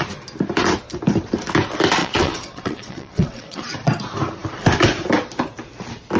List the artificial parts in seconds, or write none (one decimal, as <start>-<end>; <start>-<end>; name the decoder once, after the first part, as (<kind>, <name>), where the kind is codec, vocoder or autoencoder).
2.0-3.6 (vocoder, WaveNeXt)